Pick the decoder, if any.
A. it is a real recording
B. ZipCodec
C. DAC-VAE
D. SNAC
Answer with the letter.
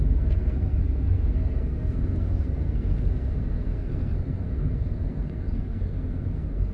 D